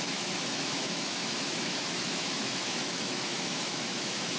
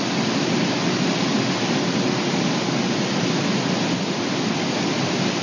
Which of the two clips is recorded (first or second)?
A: second